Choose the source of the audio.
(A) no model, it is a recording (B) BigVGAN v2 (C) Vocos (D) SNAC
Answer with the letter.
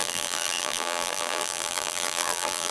B